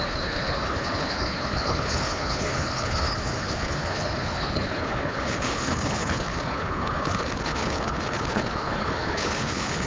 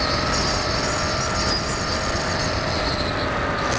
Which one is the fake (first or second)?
first